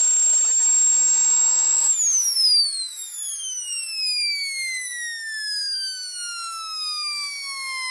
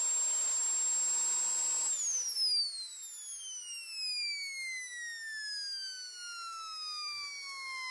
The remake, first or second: first